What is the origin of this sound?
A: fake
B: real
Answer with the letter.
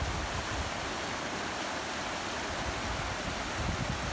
B